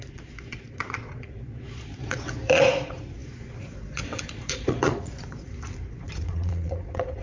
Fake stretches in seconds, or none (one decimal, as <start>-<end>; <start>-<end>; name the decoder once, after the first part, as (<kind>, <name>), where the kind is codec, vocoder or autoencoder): 0.0-7.2 (vocoder, Vocos)